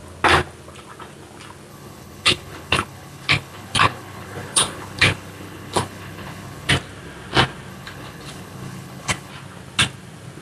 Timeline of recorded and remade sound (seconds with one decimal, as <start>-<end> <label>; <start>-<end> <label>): 0.0-1.7 recorded; 1.7-6.7 remade; 6.7-7.7 recorded; 7.7-9.3 remade; 9.3-10.4 recorded